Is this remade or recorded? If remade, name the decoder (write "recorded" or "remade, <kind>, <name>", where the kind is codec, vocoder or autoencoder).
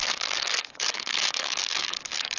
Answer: remade, codec, DAC